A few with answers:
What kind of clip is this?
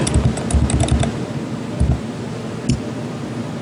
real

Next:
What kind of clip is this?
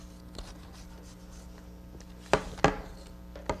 real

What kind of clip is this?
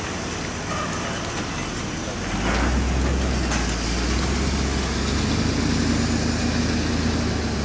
real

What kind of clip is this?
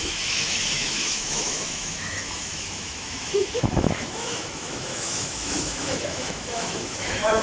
fake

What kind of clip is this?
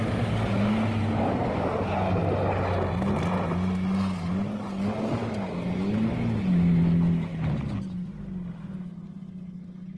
real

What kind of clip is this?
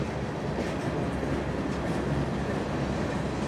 real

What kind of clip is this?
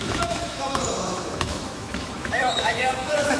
fake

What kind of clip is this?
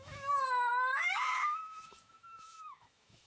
fake